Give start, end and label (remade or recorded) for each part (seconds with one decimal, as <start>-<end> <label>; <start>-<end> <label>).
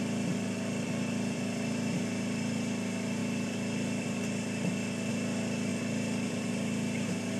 0.0-7.4 recorded